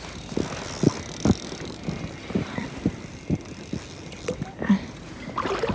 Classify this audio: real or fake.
real